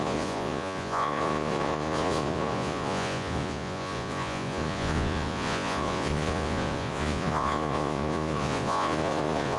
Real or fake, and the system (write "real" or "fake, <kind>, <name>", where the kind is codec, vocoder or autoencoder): fake, vocoder, Vocos